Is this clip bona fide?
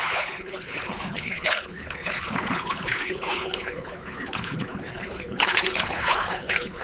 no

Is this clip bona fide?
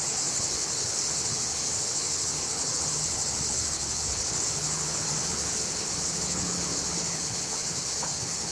no